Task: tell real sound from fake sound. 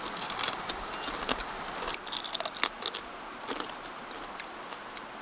real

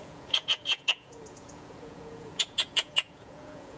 fake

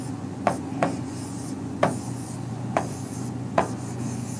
fake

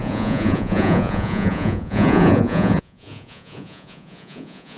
fake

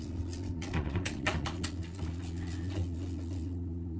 fake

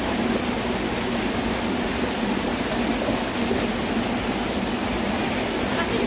real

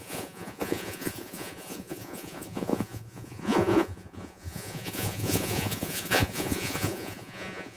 fake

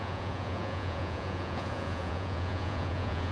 fake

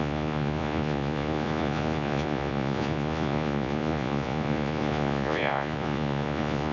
fake